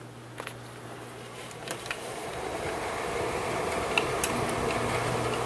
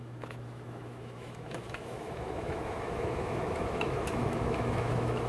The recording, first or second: first